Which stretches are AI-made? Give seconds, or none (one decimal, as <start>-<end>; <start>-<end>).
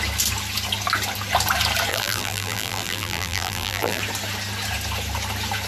1.9-4.0